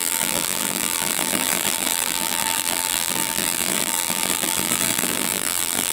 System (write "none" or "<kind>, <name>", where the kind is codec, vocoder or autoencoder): vocoder, BigVGAN v2